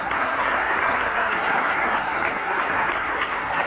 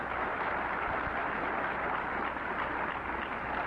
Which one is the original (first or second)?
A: second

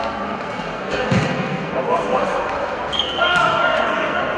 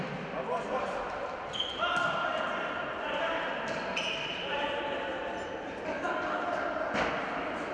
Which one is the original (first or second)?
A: second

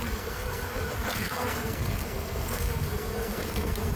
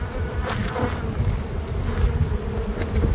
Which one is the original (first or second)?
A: second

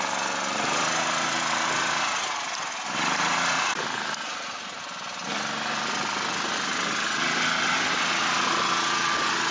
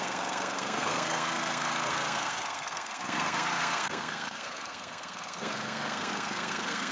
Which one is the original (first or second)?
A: first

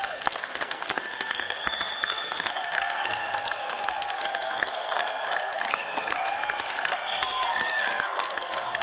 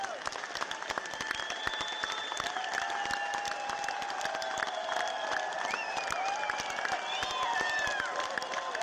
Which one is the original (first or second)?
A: second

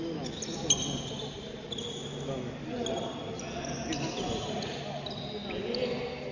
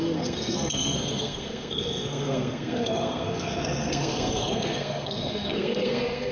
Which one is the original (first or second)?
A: first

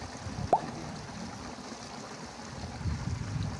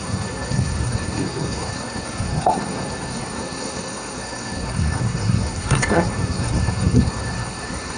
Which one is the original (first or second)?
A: first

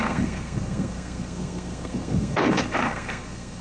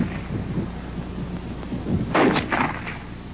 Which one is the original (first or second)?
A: second